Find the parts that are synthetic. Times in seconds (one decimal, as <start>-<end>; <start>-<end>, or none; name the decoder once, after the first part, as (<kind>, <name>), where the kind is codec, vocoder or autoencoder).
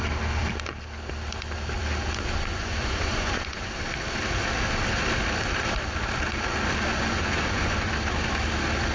2.5-3.7 (vocoder, Vocos); 6.9-7.9